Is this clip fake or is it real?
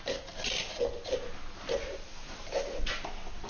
real